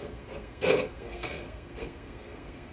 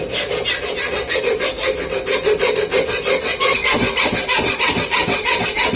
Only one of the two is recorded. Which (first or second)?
second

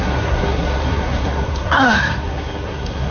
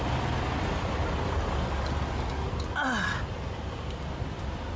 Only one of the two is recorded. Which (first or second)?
second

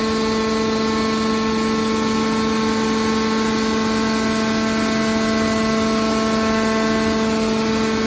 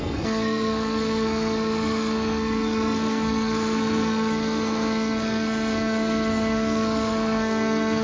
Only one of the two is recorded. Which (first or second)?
first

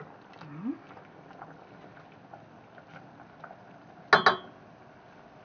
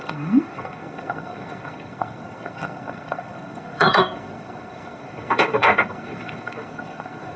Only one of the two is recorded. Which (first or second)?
first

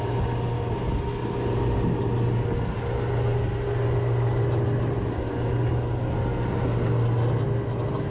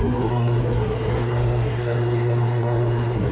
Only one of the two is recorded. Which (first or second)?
first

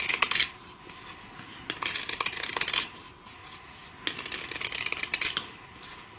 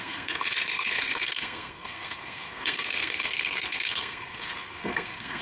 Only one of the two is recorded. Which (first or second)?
first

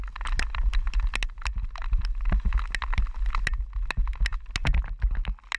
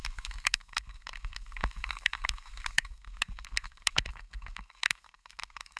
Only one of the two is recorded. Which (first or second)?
first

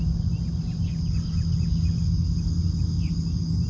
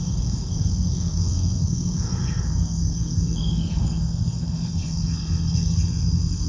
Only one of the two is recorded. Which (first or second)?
first